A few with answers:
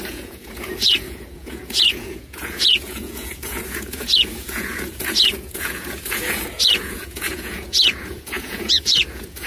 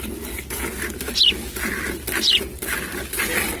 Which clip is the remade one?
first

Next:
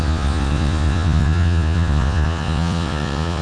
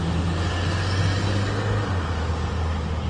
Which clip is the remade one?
first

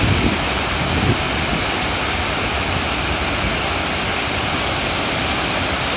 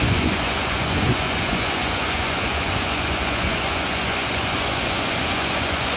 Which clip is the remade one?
second